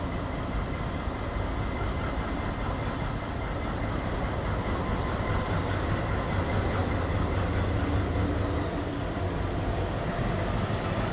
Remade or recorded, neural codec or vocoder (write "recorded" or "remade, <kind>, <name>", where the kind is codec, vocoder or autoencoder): recorded